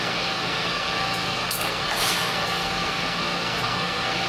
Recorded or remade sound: remade